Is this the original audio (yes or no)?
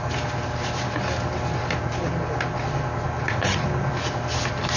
yes